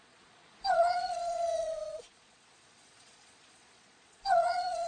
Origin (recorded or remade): remade